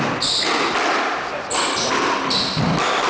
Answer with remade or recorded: recorded